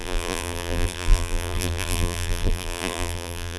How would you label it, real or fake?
fake